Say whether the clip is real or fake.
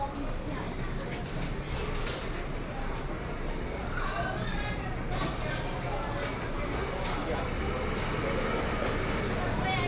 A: real